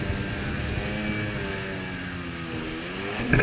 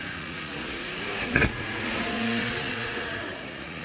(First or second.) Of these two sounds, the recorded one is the first